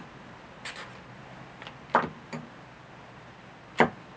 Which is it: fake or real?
real